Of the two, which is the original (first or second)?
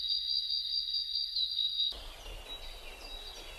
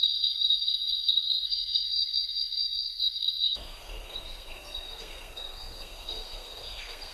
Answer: first